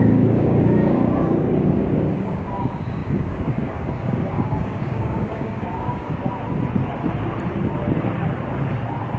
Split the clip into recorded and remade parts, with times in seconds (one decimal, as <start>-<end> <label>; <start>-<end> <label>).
0.0-6.2 remade; 6.2-9.2 recorded